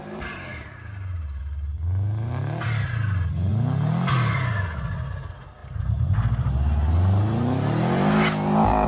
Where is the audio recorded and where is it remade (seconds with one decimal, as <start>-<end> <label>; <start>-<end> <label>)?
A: 0.0-5.6 recorded; 5.6-6.5 remade; 6.5-8.9 recorded

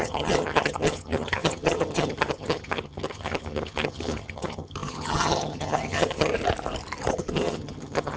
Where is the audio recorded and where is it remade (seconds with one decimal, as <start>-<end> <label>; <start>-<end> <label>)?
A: 0.0-6.3 remade; 6.3-7.1 recorded; 7.1-8.2 remade